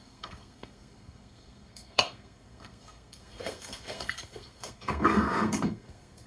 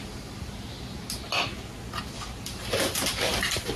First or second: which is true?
second